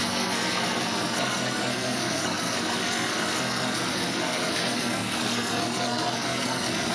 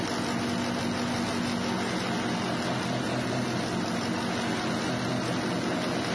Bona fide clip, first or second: second